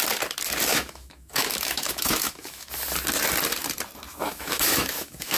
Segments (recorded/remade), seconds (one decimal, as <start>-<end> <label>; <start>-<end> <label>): 0.0-0.7 recorded; 0.7-2.7 remade; 2.7-4.1 recorded; 4.1-5.4 remade